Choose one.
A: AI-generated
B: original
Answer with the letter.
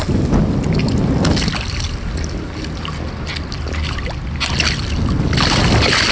B